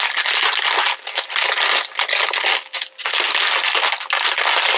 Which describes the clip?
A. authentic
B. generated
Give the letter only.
A